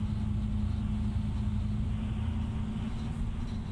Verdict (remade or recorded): recorded